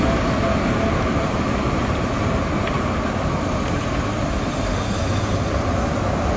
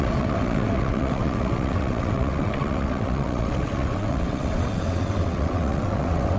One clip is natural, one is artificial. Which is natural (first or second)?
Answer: first